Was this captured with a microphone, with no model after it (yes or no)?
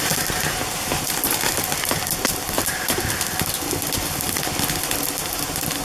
yes